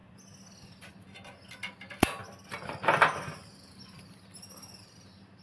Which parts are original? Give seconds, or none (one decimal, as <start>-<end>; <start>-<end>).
0.0-5.4